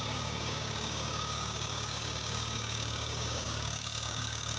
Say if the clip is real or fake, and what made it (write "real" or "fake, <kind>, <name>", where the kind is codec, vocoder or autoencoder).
fake, codec, DAC